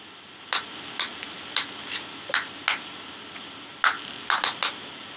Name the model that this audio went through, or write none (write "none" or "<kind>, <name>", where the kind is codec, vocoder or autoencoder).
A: none